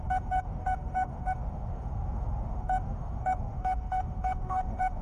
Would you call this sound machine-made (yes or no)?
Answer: yes